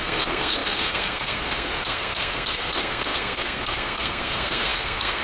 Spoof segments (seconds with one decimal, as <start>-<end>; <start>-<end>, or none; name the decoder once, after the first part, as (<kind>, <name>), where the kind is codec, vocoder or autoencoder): 0.0-5.2 (codec, SNAC)